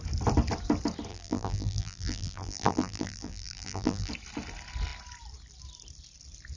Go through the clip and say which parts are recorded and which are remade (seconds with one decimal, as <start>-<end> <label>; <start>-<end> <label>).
0.0-1.1 recorded; 1.1-4.1 remade; 4.1-6.6 recorded